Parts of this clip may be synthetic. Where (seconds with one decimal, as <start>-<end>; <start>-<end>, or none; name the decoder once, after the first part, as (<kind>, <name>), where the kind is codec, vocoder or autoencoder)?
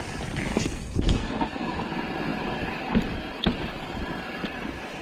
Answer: 0.5-1.9 (codec, SNAC)